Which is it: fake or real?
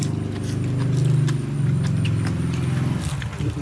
real